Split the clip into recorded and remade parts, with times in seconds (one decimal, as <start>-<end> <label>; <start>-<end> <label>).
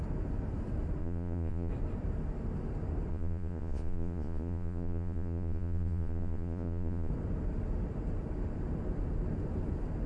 0.0-1.0 recorded; 1.0-1.7 remade; 1.7-3.1 recorded; 3.1-7.1 remade; 7.1-10.1 recorded